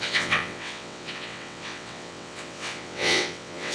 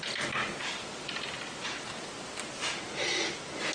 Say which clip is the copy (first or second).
first